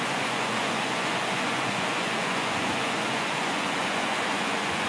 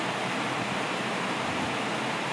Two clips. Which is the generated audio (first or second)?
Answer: first